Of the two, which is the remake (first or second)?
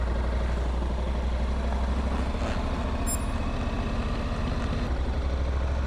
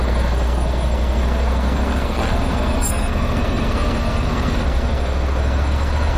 second